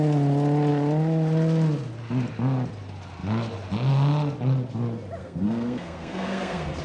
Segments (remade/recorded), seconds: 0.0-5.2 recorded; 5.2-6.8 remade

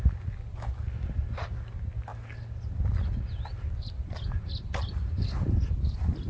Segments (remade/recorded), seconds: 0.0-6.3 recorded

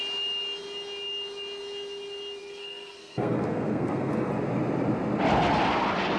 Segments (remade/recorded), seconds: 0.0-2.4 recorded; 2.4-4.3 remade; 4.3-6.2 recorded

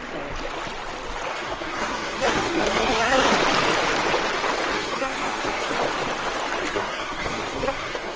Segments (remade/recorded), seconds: 0.0-1.3 recorded; 1.3-3.3 remade; 3.3-4.7 recorded; 4.7-5.7 remade; 5.7-6.7 recorded; 6.7-8.2 remade

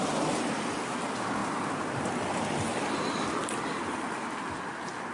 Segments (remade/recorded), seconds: 0.0-5.1 recorded

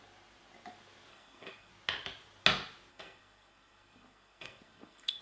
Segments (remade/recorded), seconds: 0.0-1.1 recorded; 1.1-1.7 remade; 1.7-2.9 recorded; 2.9-5.2 remade

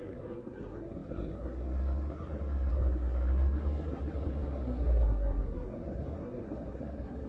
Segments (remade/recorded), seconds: 0.0-7.3 remade

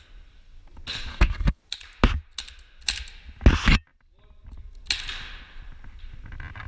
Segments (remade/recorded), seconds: 0.0-1.1 recorded; 1.1-1.6 remade; 1.6-6.7 recorded